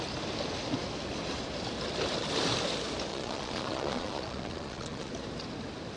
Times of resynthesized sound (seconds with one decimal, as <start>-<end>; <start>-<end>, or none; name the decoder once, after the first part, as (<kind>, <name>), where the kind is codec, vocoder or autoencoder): 3.1-5.1 (vocoder, Vocos)